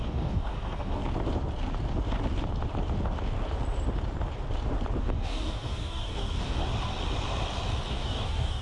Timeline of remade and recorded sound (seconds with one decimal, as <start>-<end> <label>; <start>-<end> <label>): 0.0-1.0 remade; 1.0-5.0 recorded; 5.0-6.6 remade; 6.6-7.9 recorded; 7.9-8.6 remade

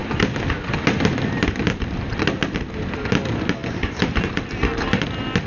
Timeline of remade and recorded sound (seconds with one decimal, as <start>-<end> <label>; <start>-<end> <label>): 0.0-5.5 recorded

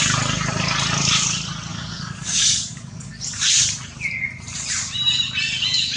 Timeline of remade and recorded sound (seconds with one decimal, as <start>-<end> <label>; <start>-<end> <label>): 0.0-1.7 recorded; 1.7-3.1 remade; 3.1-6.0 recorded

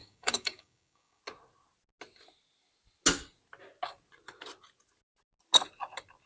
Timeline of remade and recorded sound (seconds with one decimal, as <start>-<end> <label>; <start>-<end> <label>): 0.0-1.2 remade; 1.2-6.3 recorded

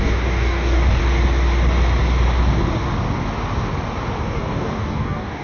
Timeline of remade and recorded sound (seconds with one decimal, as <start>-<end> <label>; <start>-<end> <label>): 0.0-1.0 remade; 1.0-4.2 recorded; 4.2-5.4 remade

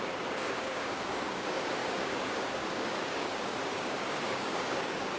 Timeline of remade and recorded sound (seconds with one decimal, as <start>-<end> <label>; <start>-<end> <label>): 0.0-5.2 remade

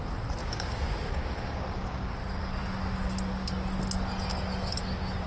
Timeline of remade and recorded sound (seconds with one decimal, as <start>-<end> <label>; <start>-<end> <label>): 0.0-0.4 recorded; 0.4-2.1 remade; 2.1-5.3 recorded